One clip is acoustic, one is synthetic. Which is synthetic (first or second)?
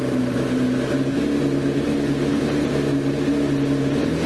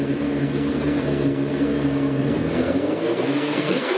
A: second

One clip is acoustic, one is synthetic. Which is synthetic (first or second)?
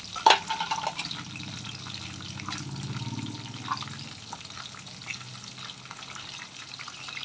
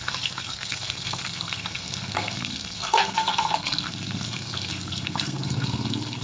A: second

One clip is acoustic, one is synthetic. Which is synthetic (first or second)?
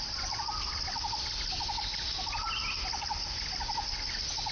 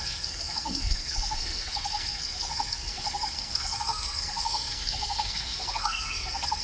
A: second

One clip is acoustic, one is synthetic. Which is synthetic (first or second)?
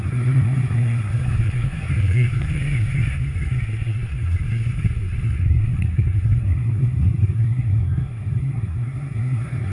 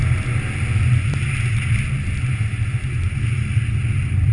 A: first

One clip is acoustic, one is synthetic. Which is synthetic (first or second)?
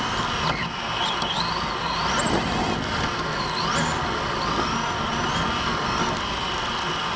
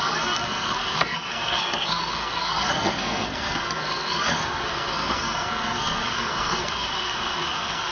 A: second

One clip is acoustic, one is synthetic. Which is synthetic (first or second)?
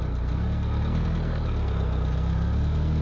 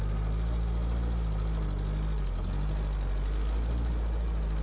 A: first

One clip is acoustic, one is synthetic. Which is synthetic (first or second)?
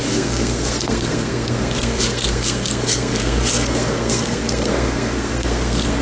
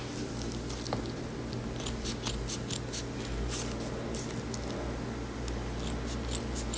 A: first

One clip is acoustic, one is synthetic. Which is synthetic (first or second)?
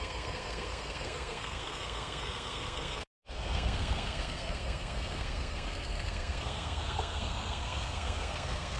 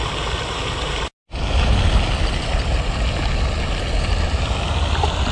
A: first